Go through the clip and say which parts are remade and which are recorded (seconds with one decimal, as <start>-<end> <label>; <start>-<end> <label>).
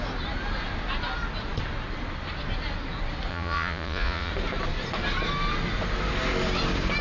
0.0-3.3 recorded; 3.3-4.3 remade; 4.3-7.0 recorded